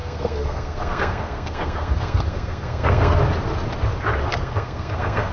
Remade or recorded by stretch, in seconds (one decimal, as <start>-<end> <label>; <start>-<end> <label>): 0.0-3.2 remade; 3.2-4.3 recorded; 4.3-5.3 remade